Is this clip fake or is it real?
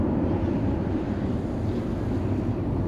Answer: real